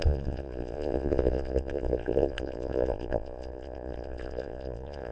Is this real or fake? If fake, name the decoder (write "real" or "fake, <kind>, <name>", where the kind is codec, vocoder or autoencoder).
fake, vocoder, Vocos